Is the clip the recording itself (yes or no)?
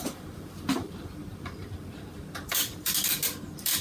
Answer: no